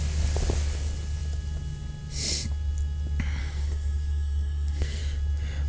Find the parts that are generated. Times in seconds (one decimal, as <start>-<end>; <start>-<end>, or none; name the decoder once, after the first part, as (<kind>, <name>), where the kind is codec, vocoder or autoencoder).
3.4-5.0 (codec, SNAC)